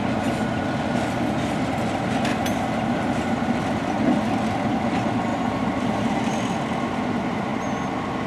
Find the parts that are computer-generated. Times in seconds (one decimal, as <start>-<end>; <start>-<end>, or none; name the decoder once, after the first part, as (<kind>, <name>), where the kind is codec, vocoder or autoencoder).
2.3-3.5 (vocoder, BigVGAN v2); 5.3-6.2